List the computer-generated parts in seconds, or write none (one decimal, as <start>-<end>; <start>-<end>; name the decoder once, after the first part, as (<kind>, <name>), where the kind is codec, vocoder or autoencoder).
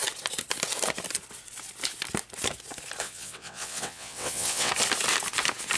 3.0-4.7 (vocoder, WaveNeXt)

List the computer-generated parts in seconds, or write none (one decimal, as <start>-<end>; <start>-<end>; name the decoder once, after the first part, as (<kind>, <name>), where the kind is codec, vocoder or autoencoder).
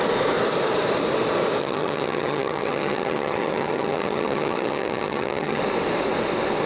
1.6-5.6 (vocoder, HiFi-GAN)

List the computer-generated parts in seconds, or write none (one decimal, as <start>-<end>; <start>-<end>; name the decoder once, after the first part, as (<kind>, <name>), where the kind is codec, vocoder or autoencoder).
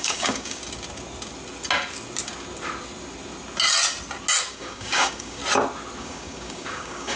0.0-0.6 (codec, DAC); 4.5-5.4; 6.0-7.2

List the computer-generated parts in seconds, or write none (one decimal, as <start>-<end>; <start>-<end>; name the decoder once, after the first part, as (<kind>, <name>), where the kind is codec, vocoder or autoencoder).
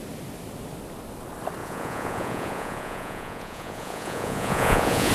1.6-5.1 (vocoder, Vocos)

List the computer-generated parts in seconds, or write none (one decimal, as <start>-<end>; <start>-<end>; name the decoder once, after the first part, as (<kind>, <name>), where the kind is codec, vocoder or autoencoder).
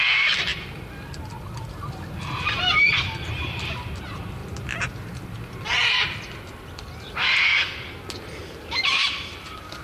0.0-4.4 (vocoder, BigVGAN v2); 4.9-7.5; 8.1-9.8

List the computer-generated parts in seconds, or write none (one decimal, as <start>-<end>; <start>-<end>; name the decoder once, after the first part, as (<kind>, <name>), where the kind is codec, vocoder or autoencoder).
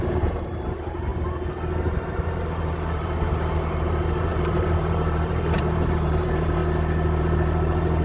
0.0-1.1 (vocoder, BigVGAN v2); 2.9-6.6; 7.2-8.0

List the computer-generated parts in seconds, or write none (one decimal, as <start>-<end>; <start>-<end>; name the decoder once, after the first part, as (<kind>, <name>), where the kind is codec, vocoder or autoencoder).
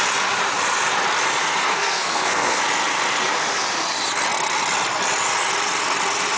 1.7-2.6 (codec, SNAC)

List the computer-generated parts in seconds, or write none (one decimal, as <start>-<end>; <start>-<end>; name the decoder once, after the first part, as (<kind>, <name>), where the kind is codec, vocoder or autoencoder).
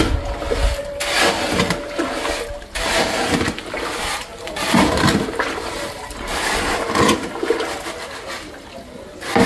4.3-6.7 (vocoder, BigVGAN v2)